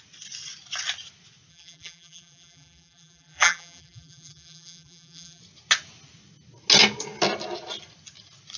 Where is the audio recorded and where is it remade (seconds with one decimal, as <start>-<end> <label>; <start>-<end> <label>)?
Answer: 0.0-1.5 recorded; 1.5-5.4 remade; 5.4-8.6 recorded